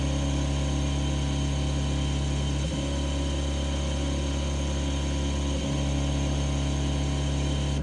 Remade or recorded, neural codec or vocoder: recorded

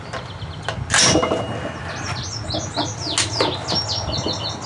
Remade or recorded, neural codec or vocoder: recorded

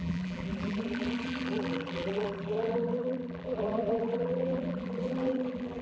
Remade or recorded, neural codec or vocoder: remade, vocoder, BigVGAN v2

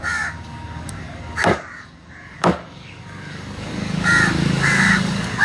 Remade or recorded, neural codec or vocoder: remade, codec, DAC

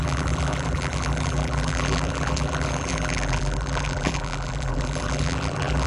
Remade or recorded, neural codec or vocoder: remade, vocoder, BigVGAN v2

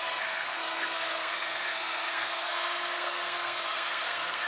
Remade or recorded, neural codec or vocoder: remade, codec, SNAC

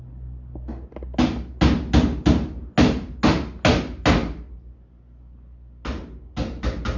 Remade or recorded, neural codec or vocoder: recorded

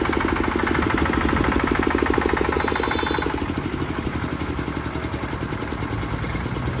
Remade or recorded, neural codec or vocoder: recorded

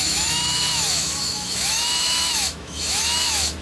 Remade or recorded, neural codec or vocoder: remade, autoencoder, DAC-VAE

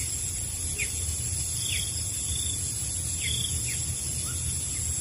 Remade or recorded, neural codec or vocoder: recorded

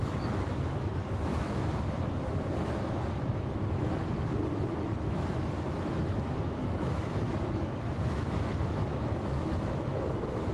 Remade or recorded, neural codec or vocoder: remade, autoencoder, DAC-VAE